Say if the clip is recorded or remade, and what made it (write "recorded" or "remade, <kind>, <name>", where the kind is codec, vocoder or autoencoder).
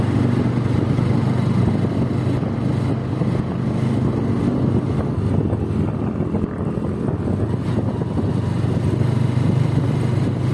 recorded